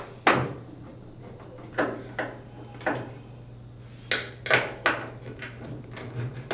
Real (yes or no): yes